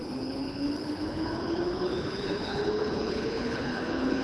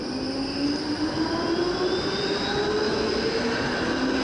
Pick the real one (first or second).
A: second